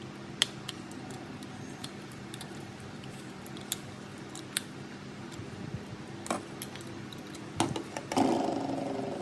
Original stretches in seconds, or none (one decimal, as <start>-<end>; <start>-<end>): 0.0-1.8; 3.4-9.2